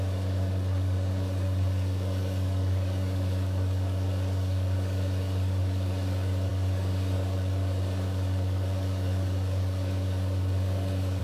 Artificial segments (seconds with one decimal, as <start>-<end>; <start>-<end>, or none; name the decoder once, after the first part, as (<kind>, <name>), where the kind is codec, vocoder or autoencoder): 0.0-11.2 (codec, DAC)